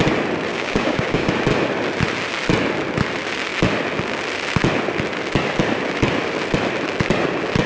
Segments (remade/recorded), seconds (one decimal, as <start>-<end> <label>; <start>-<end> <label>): 0.0-0.5 recorded; 0.5-1.3 remade; 1.3-7.7 recorded